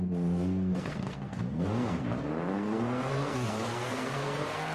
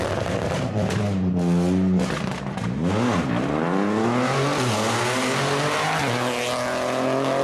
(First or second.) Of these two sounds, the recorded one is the second